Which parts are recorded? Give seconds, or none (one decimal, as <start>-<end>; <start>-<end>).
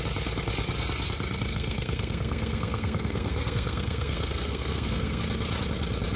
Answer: 0.0-1.5; 5.2-6.2